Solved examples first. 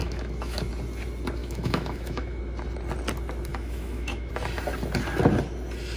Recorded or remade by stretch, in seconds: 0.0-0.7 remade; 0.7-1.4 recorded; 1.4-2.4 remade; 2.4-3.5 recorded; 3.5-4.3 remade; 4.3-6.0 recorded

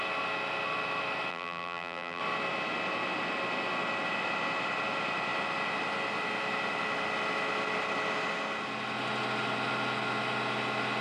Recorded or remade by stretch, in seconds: 0.0-1.3 recorded; 1.3-2.2 remade; 2.2-11.0 recorded

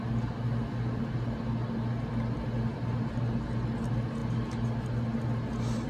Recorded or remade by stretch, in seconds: 0.0-5.9 recorded

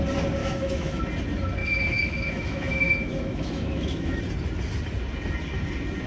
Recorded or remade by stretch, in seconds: 0.0-0.4 recorded; 0.4-1.0 remade; 1.0-1.6 recorded; 1.6-4.2 remade; 4.2-6.1 recorded

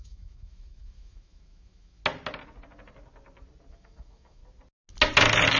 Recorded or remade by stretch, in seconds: 0.0-2.0 remade; 2.0-3.7 recorded; 3.7-4.4 remade; 4.4-5.6 recorded

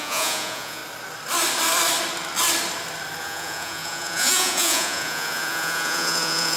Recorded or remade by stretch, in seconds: 0.0-0.8 remade; 0.8-3.2 recorded; 3.2-6.6 remade